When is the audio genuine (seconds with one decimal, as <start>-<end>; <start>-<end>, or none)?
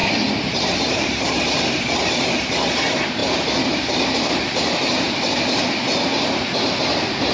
2.1-3.2; 5.7-7.3